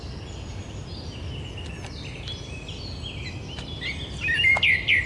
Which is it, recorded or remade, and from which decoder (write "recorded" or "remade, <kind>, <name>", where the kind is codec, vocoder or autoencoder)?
recorded